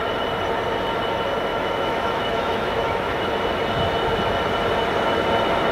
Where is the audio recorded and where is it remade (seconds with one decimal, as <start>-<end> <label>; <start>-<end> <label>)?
0.0-1.5 recorded; 1.5-3.3 remade; 3.3-5.7 recorded